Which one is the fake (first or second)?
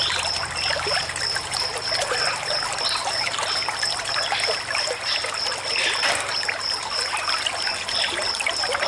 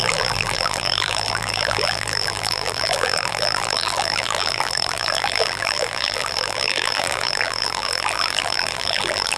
second